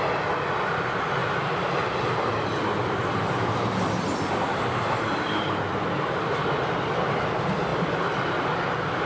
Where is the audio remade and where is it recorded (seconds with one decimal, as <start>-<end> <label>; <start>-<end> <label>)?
0.0-9.1 recorded